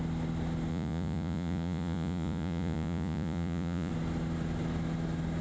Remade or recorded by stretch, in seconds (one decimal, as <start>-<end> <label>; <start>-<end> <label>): 0.0-0.7 recorded; 0.7-3.9 remade; 3.9-5.4 recorded